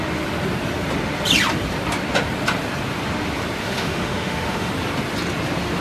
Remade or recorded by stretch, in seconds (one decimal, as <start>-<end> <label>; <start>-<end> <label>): 0.0-3.6 recorded; 3.6-4.7 remade; 4.7-5.8 recorded